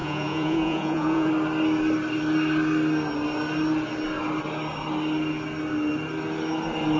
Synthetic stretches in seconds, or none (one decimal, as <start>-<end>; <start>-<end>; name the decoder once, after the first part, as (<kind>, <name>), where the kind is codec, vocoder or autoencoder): 0.0-1.3 (vocoder, Vocos)